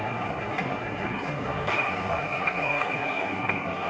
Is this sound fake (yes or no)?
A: yes